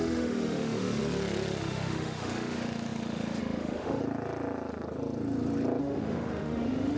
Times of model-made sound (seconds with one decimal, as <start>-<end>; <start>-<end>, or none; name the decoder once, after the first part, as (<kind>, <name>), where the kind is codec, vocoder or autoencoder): 0.0-1.0 (autoencoder, DAC-VAE); 1.6-4.0; 5.8-7.0